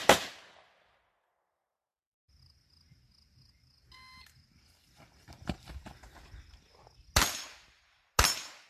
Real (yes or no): yes